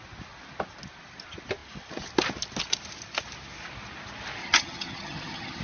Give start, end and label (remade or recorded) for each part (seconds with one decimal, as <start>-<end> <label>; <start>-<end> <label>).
0.0-4.4 recorded; 4.4-5.6 remade